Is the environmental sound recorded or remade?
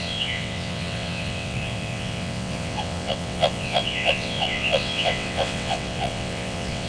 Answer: remade